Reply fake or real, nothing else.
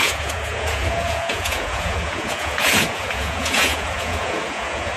fake